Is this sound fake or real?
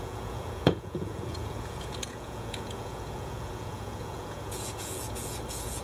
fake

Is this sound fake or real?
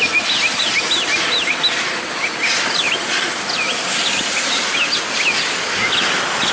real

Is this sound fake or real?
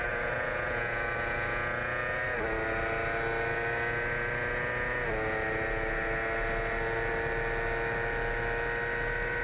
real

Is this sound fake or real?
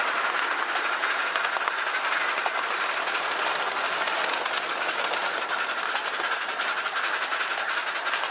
real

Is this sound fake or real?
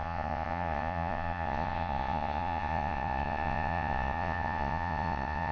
fake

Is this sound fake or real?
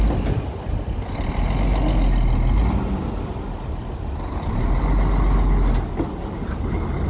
real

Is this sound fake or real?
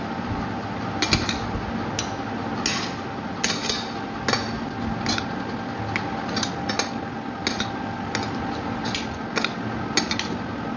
real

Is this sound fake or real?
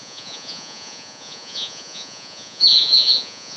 fake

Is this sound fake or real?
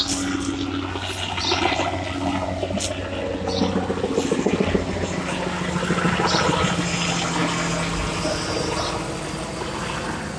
real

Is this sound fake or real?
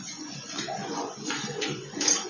fake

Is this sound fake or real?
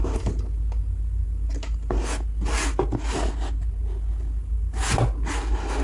real